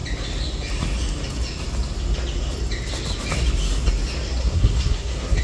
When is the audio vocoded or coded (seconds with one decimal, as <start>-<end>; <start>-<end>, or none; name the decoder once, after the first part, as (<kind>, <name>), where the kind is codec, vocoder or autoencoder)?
4.4-5.4 (codec, SNAC)